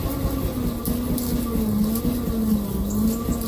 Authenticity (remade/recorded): recorded